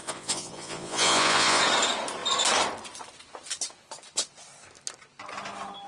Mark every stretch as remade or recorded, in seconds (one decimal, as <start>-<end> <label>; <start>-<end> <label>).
0.0-1.6 remade; 1.6-5.9 recorded